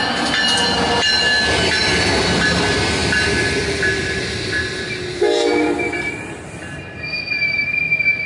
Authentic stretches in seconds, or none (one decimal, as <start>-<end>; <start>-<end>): 0.0-8.3